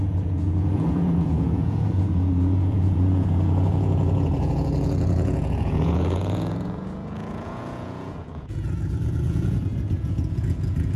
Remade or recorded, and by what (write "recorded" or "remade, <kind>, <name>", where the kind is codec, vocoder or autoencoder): remade, vocoder, Vocos